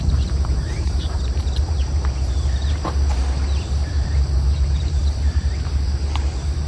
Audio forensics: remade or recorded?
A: remade